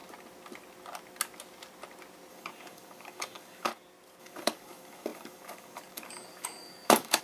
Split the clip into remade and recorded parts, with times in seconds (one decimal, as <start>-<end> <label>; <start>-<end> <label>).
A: 0.0-2.3 recorded; 2.3-3.7 remade; 3.7-4.2 recorded; 4.2-7.2 remade